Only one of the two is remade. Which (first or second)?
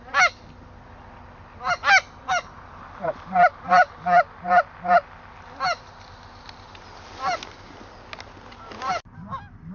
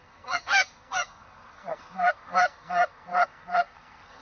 second